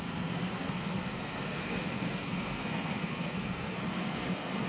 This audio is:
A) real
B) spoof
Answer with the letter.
B